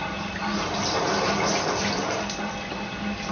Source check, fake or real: real